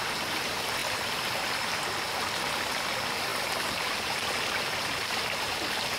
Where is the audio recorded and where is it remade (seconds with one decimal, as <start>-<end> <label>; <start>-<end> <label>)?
0.0-6.0 recorded

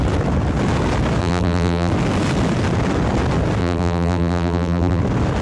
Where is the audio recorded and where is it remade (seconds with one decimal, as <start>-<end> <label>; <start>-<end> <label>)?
0.0-1.2 recorded; 1.2-1.9 remade; 1.9-3.6 recorded; 3.6-5.0 remade; 5.0-5.4 recorded

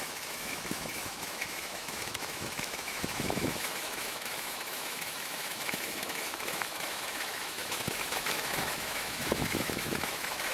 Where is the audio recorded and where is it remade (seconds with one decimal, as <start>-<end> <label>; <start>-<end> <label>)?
0.0-10.5 remade

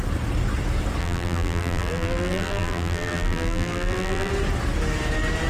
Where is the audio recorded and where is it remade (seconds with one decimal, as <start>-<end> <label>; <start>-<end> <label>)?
0.0-1.0 recorded; 1.0-4.3 remade; 4.3-5.5 recorded

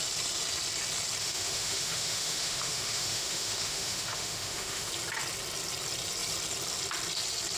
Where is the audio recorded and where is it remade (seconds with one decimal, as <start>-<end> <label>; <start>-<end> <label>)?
0.0-1.2 recorded; 1.2-4.9 remade; 4.9-7.6 recorded